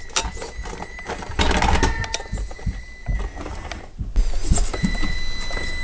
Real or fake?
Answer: real